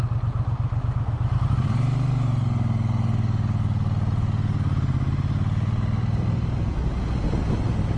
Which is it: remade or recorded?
recorded